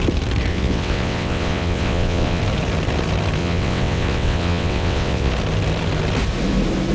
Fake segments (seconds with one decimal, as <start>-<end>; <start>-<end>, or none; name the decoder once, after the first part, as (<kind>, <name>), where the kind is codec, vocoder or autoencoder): 0.5-2.4 (vocoder, WaveNeXt); 3.4-5.3